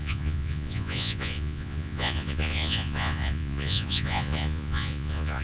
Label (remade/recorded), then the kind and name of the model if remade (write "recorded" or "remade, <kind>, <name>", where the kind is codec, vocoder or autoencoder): remade, vocoder, Vocos